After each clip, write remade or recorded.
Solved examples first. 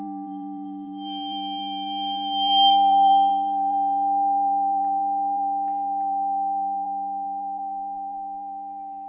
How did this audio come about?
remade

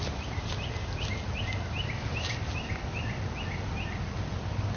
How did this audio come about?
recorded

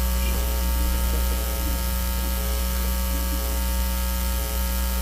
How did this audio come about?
recorded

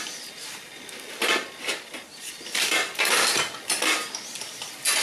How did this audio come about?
recorded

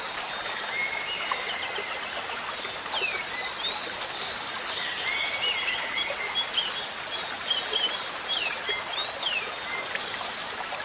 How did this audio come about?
recorded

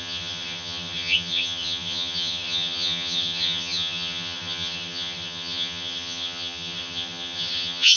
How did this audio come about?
remade